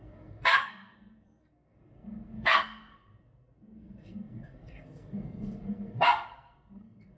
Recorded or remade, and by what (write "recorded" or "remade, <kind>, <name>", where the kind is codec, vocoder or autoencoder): remade, codec, SNAC